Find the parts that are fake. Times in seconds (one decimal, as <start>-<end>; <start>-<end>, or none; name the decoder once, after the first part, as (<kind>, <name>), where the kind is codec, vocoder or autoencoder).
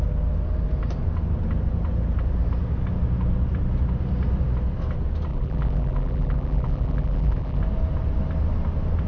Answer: 5.3-7.6 (vocoder, BigVGAN v2)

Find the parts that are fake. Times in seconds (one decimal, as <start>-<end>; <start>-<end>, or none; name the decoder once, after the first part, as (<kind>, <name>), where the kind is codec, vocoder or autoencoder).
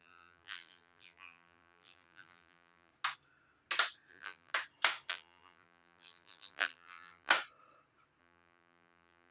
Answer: 0.0-2.9 (vocoder, BigVGAN v2); 4.1-4.5; 5.1-7.3; 8.2-9.3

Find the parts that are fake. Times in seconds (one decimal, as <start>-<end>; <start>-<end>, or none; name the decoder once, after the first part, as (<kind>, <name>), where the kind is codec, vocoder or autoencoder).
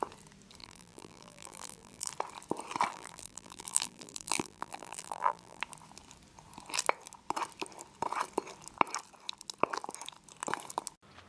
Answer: 0.6-2.1 (vocoder, BigVGAN v2); 2.9-5.6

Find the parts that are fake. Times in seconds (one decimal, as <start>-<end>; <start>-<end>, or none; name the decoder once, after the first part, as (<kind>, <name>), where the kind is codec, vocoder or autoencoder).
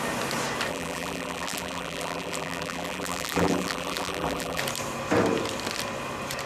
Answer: 0.7-4.6 (vocoder, BigVGAN v2)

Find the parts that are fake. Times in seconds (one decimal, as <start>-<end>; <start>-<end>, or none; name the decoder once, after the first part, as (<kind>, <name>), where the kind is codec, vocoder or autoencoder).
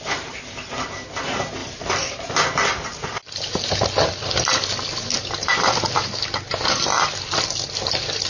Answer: 1.6-2.3 (vocoder, BigVGAN v2); 2.7-3.6